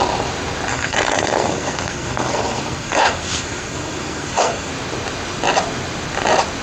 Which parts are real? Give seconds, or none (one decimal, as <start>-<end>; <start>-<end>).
0.0-0.7; 4.7-6.6